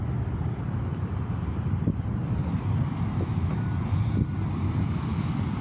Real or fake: real